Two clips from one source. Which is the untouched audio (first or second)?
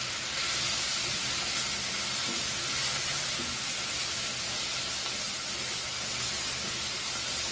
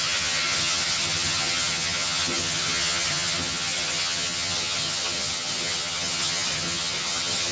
first